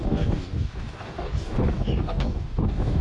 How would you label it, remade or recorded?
remade